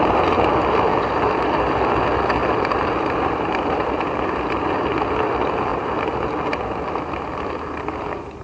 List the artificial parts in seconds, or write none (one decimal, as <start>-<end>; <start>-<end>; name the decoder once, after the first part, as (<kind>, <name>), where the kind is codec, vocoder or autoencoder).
2.4-4.7 (vocoder, BigVGAN v2)